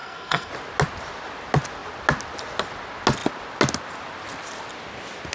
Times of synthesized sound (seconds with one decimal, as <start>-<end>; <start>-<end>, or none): 0.0-0.5